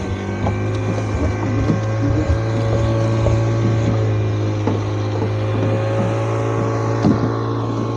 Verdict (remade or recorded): recorded